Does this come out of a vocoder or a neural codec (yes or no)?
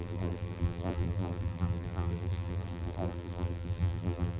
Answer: yes